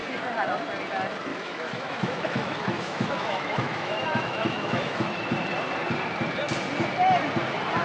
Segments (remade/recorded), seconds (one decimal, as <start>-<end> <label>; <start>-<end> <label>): 0.0-1.3 recorded; 1.3-5.3 remade; 5.3-7.8 recorded